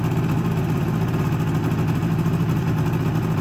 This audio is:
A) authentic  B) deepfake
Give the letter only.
A